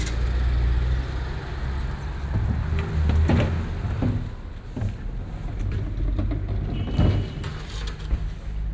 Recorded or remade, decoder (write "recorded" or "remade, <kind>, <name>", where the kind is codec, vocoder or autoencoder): recorded